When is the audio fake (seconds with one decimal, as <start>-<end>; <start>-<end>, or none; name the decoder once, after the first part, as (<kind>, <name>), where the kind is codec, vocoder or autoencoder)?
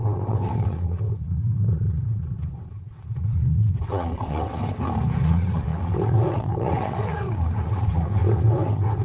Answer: 0.0-4.6 (vocoder, WaveNeXt); 5.2-9.0